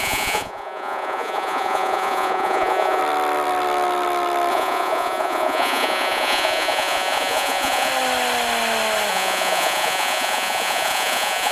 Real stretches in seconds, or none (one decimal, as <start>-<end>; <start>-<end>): 3.0-4.5; 7.9-9.1